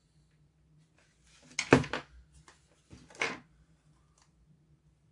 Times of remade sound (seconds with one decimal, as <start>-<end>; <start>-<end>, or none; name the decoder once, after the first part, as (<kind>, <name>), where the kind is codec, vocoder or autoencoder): none

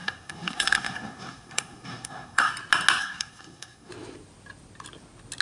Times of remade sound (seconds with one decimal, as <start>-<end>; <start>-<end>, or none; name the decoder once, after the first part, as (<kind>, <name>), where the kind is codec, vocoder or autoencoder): 0.0-2.5 (codec, SNAC); 3.0-3.9